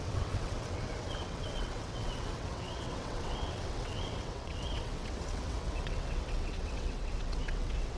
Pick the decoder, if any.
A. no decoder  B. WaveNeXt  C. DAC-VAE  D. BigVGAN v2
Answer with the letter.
B